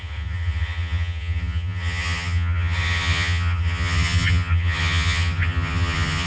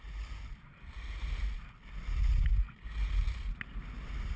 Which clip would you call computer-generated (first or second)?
first